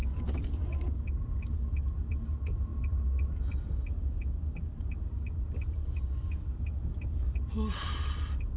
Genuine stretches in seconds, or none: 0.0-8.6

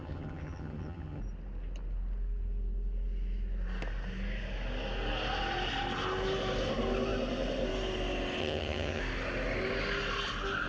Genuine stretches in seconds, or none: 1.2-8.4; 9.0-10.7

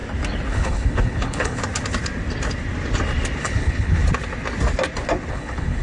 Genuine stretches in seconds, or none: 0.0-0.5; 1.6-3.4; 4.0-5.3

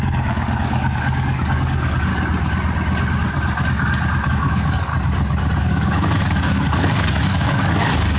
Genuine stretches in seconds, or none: 2.1-4.3; 4.9-5.6